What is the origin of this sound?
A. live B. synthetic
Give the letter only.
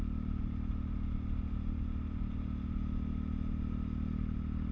A